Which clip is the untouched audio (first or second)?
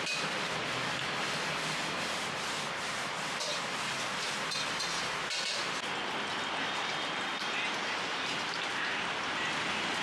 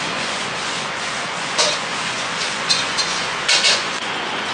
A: first